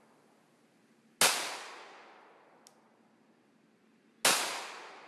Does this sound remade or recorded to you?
recorded